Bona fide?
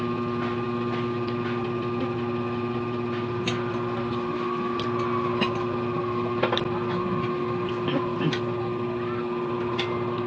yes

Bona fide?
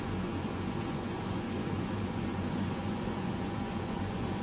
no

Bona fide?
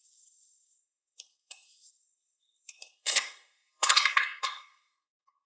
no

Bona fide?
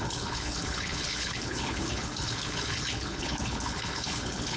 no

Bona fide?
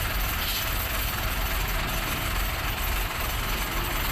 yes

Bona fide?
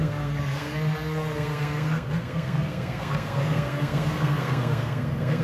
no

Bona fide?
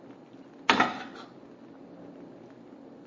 yes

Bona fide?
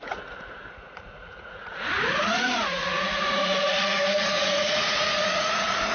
no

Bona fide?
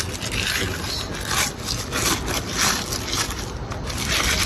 yes